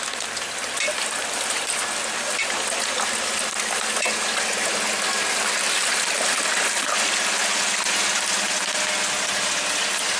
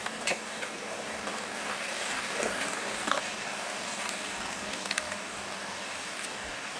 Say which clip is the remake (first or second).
second